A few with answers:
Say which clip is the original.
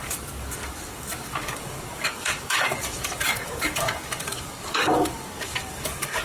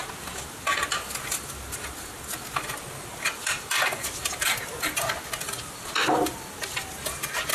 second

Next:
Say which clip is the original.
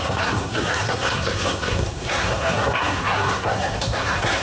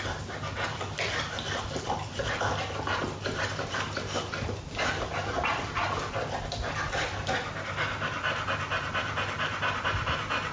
second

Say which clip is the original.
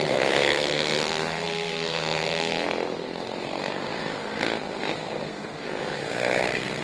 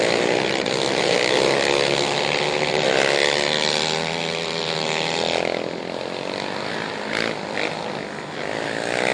second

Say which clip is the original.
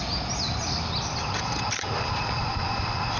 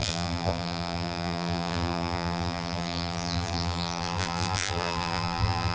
first